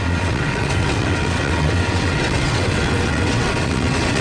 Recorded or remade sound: remade